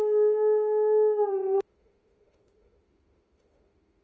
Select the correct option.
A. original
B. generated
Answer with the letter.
B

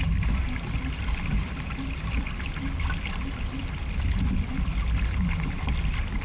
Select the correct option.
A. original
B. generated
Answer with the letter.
A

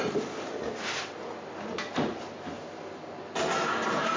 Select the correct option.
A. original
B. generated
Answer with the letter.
A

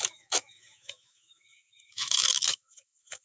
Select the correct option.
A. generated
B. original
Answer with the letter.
A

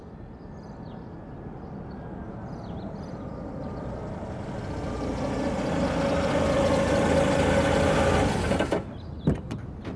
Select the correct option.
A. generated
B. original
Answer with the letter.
B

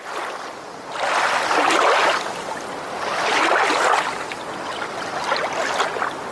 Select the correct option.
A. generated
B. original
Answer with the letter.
B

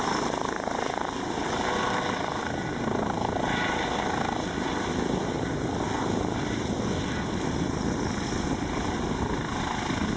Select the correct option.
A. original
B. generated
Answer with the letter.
A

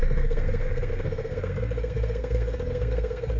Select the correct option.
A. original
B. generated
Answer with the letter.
B